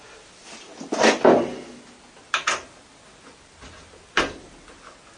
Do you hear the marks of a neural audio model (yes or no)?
no